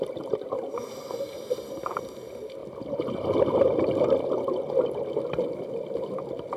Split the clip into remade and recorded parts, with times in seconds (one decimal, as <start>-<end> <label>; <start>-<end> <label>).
0.0-6.6 recorded